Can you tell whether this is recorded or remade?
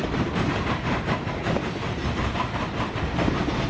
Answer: remade